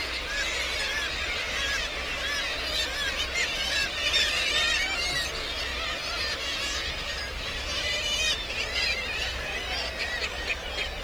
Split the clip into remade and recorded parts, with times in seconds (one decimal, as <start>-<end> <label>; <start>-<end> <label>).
0.0-5.7 recorded; 5.7-7.6 remade; 7.6-11.0 recorded